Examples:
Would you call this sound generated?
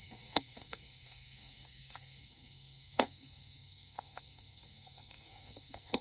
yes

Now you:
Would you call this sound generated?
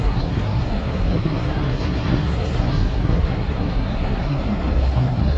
yes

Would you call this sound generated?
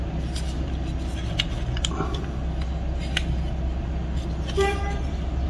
no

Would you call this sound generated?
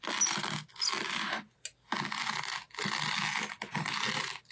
no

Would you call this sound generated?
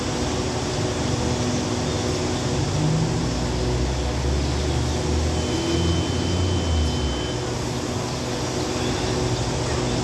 no